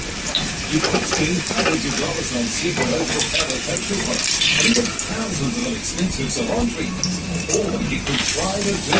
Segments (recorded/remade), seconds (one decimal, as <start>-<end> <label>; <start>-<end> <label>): 0.0-7.1 recorded; 7.1-7.8 remade; 7.8-9.0 recorded